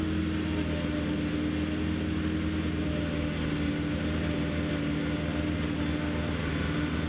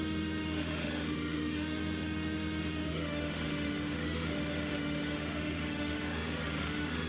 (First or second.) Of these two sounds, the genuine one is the first